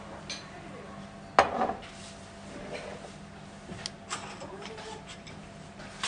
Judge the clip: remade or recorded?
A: recorded